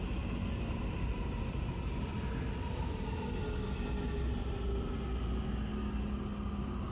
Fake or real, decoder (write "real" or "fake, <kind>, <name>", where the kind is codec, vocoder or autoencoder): real